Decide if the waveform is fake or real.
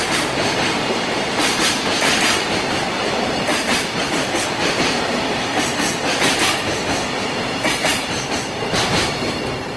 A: fake